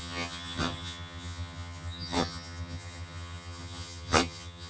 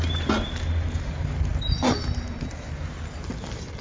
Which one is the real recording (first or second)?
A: second